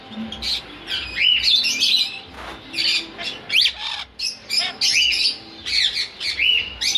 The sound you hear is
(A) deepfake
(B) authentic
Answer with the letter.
B